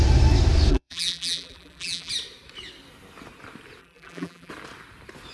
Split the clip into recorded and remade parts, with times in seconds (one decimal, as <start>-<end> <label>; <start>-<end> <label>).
0.0-0.7 recorded; 0.7-2.1 remade; 2.1-3.8 recorded; 3.8-4.5 remade; 4.5-5.3 recorded